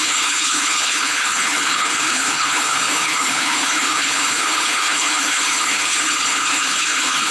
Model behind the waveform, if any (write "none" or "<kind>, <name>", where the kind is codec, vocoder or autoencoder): codec, HILCodec